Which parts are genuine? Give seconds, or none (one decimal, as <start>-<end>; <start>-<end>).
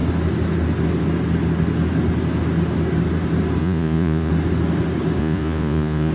0.0-3.6; 4.3-5.2